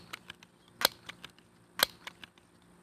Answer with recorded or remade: recorded